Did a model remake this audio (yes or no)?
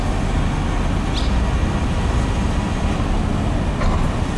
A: no